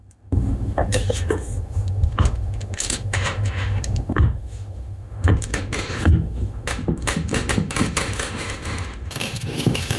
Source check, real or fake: fake